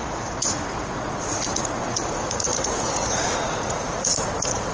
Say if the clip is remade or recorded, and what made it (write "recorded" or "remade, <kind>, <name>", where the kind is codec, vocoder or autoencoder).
remade, vocoder, Vocos